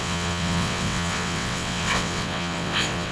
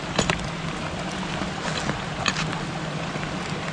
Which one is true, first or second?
second